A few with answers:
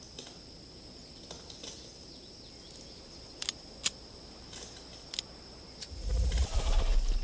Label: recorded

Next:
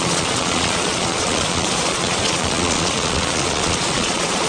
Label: remade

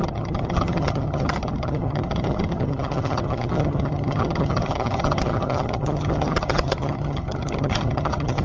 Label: remade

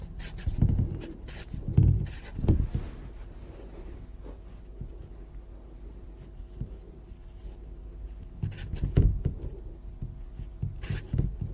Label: recorded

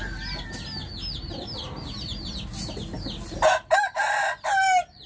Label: recorded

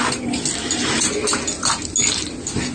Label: recorded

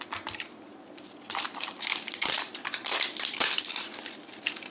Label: remade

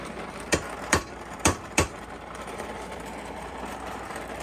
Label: remade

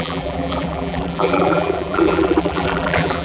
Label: remade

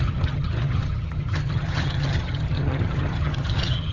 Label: remade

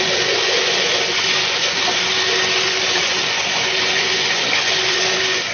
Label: remade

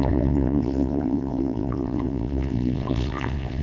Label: remade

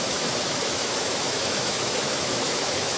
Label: remade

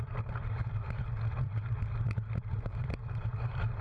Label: remade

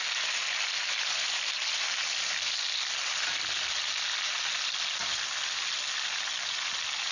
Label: recorded